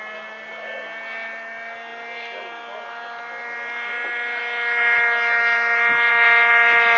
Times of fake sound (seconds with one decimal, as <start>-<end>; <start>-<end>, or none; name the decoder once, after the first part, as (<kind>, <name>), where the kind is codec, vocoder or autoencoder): none

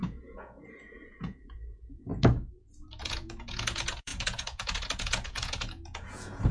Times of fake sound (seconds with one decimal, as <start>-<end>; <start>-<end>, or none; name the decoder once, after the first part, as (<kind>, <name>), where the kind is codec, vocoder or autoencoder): 0.0-2.1 (vocoder, Vocos); 3.0-6.5

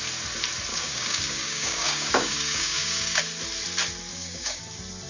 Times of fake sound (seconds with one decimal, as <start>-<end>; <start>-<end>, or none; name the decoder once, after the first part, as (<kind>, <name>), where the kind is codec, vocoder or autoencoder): 0.7-3.2 (codec, DAC); 4.1-4.6